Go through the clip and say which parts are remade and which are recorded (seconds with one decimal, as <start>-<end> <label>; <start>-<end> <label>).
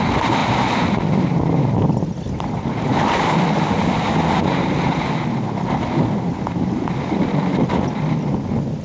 0.0-2.9 recorded; 2.9-4.9 remade; 4.9-8.8 recorded